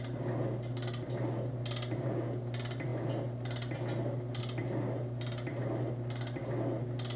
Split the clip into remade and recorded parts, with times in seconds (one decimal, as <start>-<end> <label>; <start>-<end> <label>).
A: 0.0-7.2 recorded